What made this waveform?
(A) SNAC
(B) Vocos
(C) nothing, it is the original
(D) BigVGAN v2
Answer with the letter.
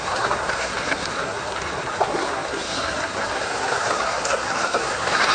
A